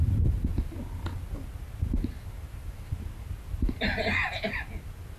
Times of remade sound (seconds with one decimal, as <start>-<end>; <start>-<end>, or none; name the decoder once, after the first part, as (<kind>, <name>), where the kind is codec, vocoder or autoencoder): none